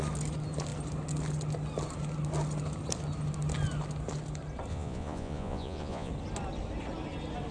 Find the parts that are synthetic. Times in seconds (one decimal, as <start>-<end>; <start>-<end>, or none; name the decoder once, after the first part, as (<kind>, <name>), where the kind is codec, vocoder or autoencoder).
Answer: 4.7-6.1 (vocoder, Vocos)